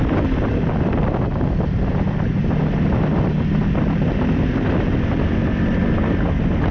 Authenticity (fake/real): real